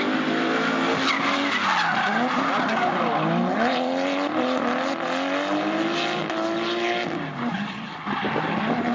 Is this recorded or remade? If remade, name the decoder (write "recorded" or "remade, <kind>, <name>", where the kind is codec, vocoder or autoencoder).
recorded